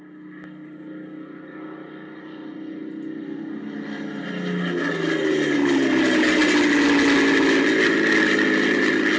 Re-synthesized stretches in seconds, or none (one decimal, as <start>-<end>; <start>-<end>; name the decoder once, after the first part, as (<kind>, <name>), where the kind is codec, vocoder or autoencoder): none